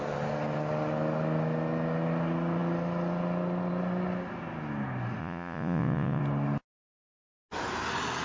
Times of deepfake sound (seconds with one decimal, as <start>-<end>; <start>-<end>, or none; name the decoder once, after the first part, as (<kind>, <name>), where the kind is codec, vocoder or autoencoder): 5.2-6.2 (vocoder, Vocos)